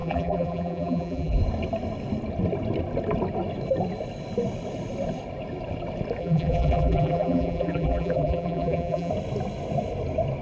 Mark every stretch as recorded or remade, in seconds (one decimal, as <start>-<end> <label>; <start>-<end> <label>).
0.0-1.4 remade; 1.4-6.2 recorded; 6.2-9.1 remade; 9.1-10.4 recorded